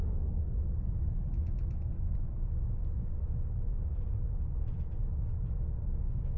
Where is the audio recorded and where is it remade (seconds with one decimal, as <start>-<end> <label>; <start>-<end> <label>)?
0.0-1.0 recorded; 1.0-4.8 remade; 4.8-6.4 recorded